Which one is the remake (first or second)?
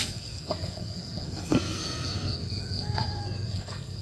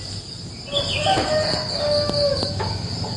first